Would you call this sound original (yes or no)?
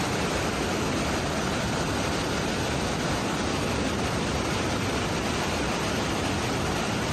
no